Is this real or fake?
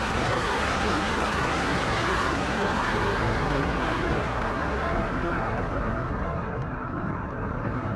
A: fake